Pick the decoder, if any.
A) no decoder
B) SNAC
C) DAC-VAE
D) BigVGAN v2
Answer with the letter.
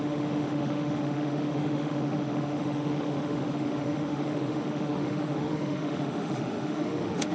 C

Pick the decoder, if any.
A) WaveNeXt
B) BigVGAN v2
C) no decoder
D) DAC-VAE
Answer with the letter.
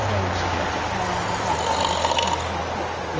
C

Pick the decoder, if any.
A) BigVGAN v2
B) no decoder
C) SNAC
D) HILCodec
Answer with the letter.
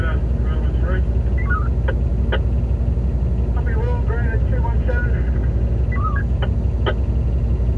B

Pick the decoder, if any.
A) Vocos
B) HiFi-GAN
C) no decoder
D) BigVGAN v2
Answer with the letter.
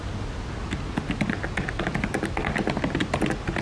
C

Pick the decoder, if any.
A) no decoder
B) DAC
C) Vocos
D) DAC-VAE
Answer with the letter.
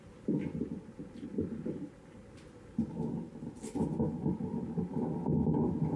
A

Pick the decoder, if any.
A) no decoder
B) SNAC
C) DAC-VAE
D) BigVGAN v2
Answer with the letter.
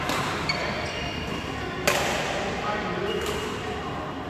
A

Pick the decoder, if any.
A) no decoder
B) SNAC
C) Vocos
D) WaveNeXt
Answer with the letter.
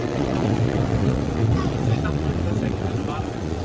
D